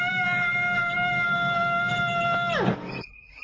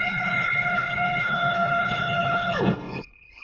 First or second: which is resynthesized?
second